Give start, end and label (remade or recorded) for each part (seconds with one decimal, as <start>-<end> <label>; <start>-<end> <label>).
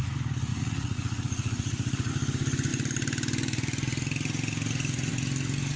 0.0-0.5 recorded; 0.5-2.1 remade; 2.1-5.8 recorded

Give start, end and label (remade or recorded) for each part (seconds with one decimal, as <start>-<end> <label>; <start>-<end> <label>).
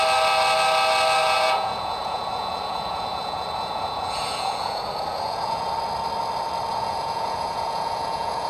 0.0-1.2 recorded; 1.2-5.7 remade; 5.7-6.7 recorded; 6.7-8.5 remade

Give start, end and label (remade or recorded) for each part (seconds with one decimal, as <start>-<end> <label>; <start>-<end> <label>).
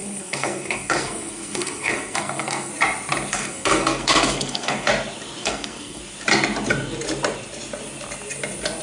0.0-2.7 remade; 2.7-3.3 recorded; 3.3-4.9 remade; 4.9-5.4 recorded; 5.4-6.0 remade; 6.0-8.8 recorded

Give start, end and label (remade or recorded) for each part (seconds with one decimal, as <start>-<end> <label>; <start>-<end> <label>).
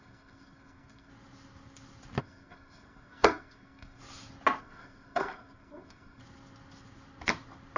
0.0-1.1 remade; 1.1-2.2 recorded; 2.2-4.0 remade; 4.0-4.6 recorded; 4.6-6.2 remade; 6.2-7.8 recorded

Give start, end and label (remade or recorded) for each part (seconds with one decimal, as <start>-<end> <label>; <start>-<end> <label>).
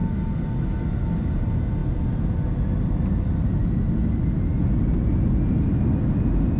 0.0-6.6 recorded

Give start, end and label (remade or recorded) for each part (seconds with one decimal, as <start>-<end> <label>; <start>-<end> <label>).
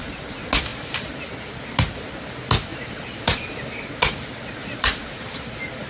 0.0-0.7 recorded; 0.7-1.3 remade; 1.3-2.7 recorded; 2.7-3.9 remade; 3.9-4.6 recorded; 4.6-5.5 remade; 5.5-5.9 recorded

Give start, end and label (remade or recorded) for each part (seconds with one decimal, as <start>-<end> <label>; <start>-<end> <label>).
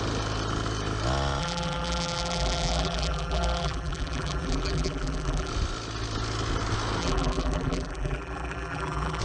0.0-1.4 recorded; 1.4-5.5 remade; 5.5-7.0 recorded; 7.0-9.2 remade